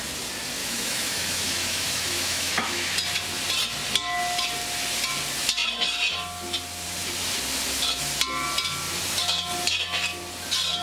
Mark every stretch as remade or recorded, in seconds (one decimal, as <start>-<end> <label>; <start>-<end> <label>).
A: 0.0-0.6 recorded; 0.6-2.9 remade; 2.9-10.8 recorded